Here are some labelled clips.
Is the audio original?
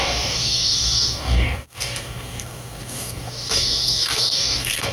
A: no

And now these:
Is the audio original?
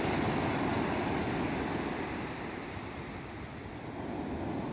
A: yes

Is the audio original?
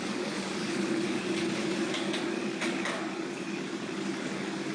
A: no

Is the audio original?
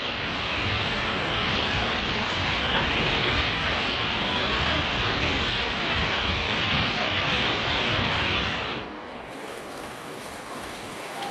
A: no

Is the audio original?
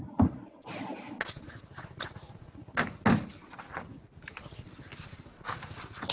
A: yes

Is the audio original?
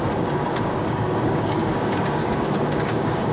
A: no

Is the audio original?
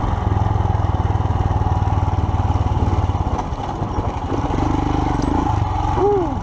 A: yes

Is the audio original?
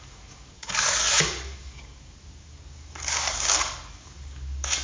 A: no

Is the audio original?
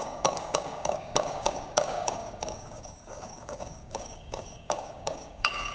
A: no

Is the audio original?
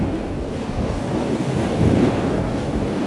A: no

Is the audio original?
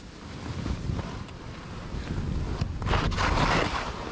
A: yes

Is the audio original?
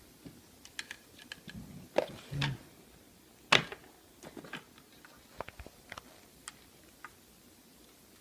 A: yes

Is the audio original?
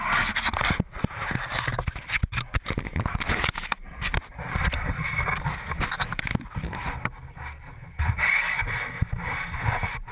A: yes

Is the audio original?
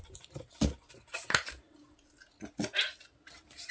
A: yes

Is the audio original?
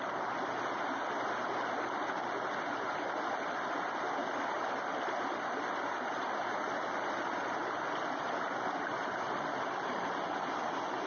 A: yes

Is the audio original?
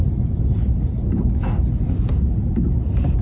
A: yes